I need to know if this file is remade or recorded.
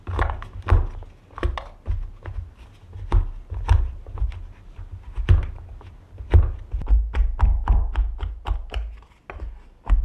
recorded